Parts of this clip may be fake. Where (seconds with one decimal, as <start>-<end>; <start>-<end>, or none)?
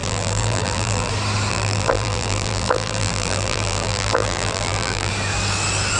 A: 0.0-1.1; 1.5-5.1